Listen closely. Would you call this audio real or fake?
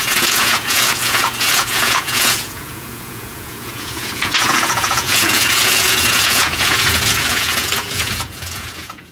fake